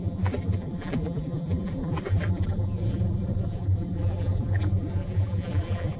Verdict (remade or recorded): remade